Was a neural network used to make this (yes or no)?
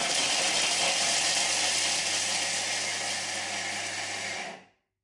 no